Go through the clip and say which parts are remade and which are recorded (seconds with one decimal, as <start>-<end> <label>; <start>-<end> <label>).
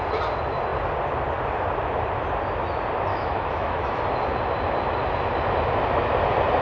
0.0-3.1 recorded; 3.1-4.0 remade; 4.0-6.6 recorded